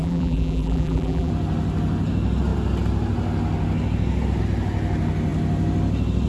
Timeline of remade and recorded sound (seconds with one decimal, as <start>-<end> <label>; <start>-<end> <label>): 0.0-1.3 remade; 1.3-6.3 recorded